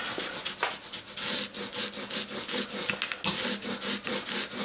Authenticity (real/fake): real